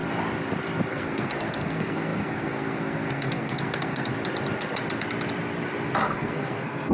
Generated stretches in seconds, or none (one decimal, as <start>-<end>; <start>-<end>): 0.9-4.1; 6.0-6.9